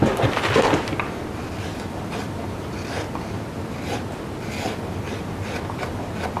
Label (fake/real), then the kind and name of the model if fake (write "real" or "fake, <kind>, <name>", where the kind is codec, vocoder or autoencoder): real